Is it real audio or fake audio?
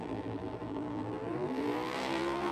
fake